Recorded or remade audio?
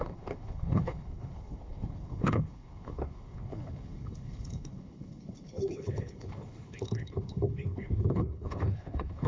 remade